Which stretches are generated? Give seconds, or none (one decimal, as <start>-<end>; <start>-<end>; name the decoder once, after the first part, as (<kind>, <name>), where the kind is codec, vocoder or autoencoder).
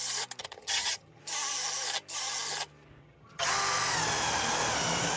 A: 0.4-1.2 (vocoder, HiFi-GAN); 3.0-3.5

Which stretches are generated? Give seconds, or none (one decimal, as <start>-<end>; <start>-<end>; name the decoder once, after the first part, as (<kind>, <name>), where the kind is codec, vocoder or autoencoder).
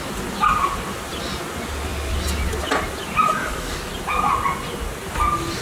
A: 3.4-3.9 (codec, DAC)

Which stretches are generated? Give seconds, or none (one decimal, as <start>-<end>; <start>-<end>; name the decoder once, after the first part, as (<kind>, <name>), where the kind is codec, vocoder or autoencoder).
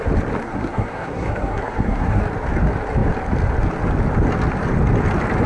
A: 0.4-2.2 (codec, SNAC)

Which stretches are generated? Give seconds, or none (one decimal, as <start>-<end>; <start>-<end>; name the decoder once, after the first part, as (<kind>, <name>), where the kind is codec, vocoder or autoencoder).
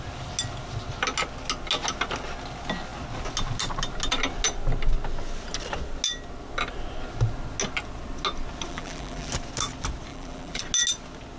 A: 8.7-9.3 (vocoder, BigVGAN v2); 10.1-10.6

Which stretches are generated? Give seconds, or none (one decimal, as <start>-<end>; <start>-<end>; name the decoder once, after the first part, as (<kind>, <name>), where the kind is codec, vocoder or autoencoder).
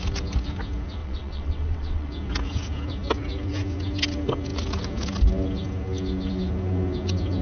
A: 1.0-2.1 (vocoder, WaveNeXt)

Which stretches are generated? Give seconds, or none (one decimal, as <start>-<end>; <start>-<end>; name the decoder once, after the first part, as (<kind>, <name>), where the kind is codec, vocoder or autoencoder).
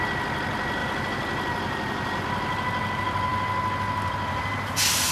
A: 0.8-2.2 (vocoder, BigVGAN v2)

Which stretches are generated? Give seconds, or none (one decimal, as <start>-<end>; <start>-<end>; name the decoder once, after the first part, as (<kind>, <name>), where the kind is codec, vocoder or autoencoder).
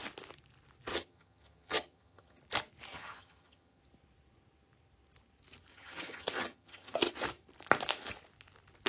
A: 0.9-2.4 (vocoder, HiFi-GAN); 2.9-3.8; 5.7-7.1